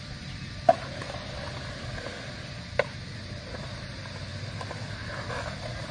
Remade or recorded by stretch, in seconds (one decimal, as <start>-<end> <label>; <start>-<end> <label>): 0.0-5.9 recorded